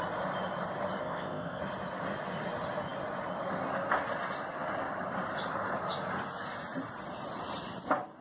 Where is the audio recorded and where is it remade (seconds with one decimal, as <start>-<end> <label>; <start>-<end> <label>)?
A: 0.0-1.0 recorded; 1.0-1.6 remade; 1.6-8.2 recorded